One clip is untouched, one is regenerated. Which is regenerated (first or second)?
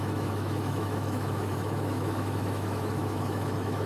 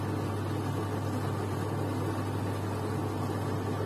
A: first